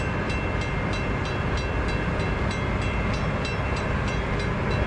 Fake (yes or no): no